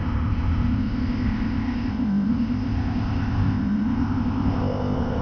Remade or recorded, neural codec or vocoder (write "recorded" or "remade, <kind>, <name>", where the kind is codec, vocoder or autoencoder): remade, codec, ZipCodec